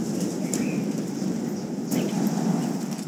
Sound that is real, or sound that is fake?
real